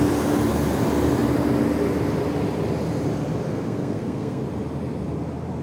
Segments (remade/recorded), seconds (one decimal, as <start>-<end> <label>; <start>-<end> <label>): 0.0-3.5 recorded; 3.5-4.4 remade; 4.4-5.6 recorded

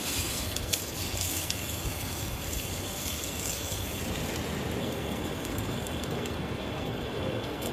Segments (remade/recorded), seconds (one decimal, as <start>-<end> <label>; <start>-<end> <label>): 0.0-4.0 remade; 4.0-4.8 recorded; 4.8-7.7 remade

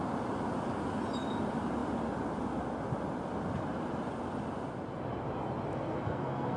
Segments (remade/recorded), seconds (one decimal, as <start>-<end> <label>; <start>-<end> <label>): 0.0-5.7 recorded; 5.7-6.6 remade

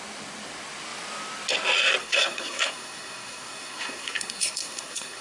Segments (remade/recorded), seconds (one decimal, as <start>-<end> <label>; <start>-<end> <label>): 0.0-2.0 recorded; 2.0-5.2 remade

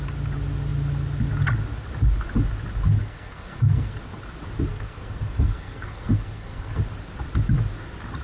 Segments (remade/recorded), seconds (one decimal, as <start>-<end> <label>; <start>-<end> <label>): 0.0-3.0 recorded; 3.0-4.0 remade; 4.0-4.7 recorded; 4.7-6.8 remade; 6.8-8.2 recorded